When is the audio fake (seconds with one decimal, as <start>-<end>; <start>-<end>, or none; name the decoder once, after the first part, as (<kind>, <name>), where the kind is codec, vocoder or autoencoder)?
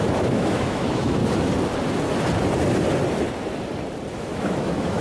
0.0-1.2 (autoencoder, DAC-VAE); 4.2-5.0